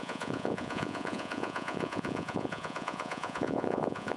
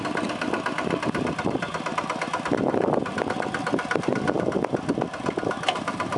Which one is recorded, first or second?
second